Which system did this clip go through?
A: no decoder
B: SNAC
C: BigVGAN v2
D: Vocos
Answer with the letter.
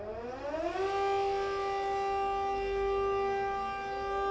A